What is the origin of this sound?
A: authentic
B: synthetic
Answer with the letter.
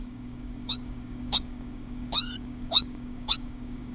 B